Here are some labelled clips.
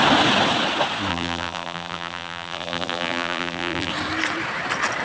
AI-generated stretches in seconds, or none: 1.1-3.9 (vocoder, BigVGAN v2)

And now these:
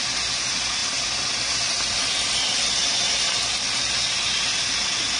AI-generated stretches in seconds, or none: none